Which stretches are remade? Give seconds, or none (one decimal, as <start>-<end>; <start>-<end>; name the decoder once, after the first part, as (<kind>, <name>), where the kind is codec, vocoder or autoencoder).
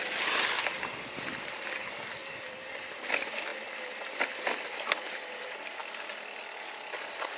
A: none